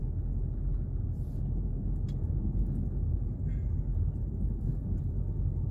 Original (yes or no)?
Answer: yes